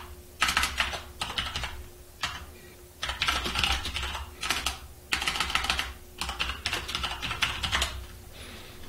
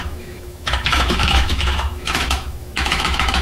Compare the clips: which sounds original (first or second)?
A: first